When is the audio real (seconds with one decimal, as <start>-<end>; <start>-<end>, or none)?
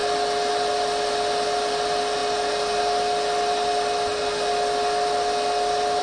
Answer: 0.0-6.0